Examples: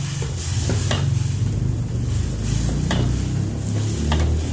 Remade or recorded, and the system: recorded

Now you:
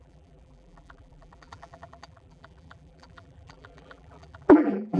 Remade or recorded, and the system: remade, vocoder, BigVGAN v2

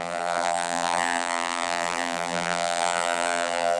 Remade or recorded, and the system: remade, vocoder, BigVGAN v2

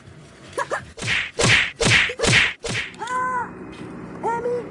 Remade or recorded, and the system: remade, vocoder, BigVGAN v2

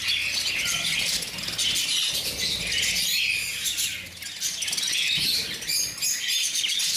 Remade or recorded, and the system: recorded